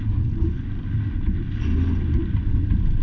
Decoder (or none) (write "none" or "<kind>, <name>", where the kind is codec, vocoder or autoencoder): none